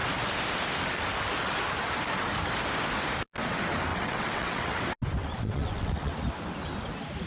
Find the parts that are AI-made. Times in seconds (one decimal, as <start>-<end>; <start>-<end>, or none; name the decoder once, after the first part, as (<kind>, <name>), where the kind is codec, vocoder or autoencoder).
3.9-4.8 (vocoder, WaveNeXt); 5.2-6.1